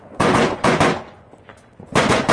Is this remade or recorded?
remade